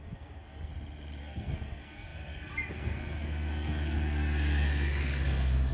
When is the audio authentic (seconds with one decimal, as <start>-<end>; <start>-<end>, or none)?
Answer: 0.7-1.2